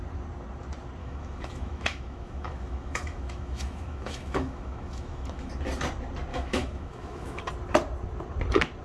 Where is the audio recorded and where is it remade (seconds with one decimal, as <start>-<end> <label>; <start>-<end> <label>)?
0.0-1.0 recorded; 1.0-5.5 remade; 5.5-6.3 recorded; 6.3-7.4 remade; 7.4-8.8 recorded